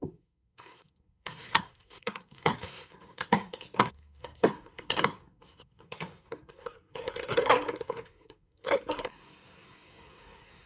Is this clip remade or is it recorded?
remade